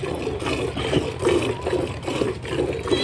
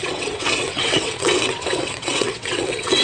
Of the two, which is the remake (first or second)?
second